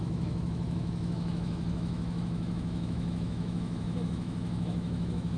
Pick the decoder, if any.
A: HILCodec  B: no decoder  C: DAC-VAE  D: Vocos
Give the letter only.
C